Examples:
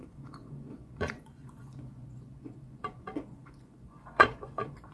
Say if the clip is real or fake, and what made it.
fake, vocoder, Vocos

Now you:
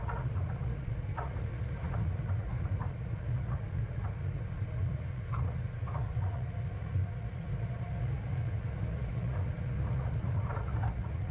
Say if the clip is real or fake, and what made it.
fake, vocoder, Vocos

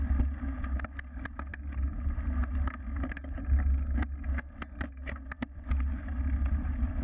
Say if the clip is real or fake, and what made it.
real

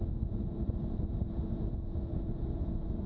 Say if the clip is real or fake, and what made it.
fake, vocoder, Vocos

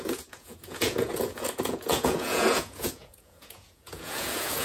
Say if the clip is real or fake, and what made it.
fake, vocoder, Vocos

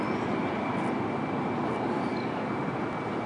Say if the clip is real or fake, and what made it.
real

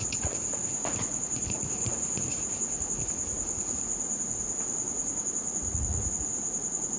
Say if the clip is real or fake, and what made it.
fake, vocoder, Vocos